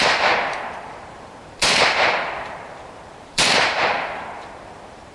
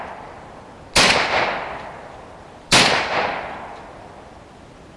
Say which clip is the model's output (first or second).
first